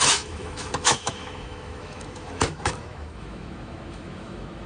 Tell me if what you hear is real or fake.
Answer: fake